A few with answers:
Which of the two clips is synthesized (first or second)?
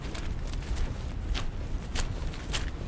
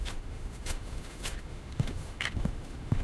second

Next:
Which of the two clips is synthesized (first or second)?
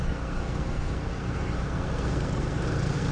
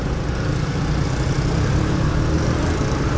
first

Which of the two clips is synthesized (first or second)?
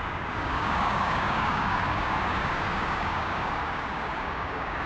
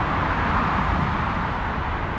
first